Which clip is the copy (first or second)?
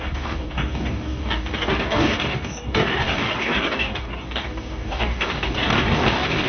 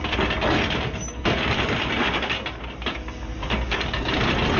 first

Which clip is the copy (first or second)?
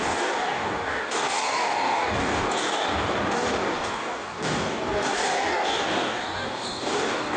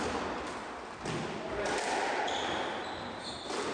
first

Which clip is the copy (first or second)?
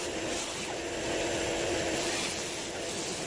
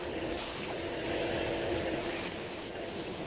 second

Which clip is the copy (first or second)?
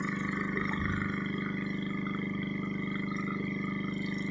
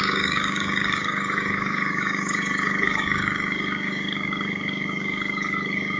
second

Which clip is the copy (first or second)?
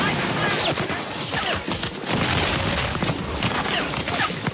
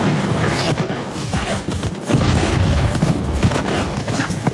second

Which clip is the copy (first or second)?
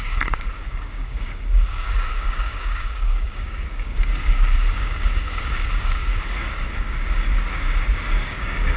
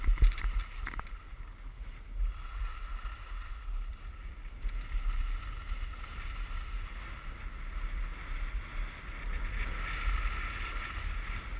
first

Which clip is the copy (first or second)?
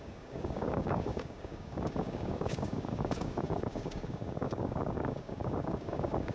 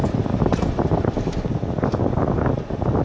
first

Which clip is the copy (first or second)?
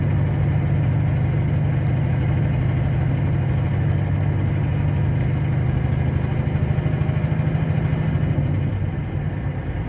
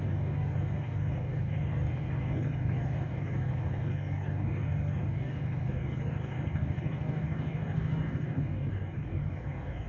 second